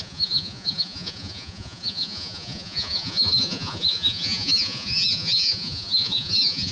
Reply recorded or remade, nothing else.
remade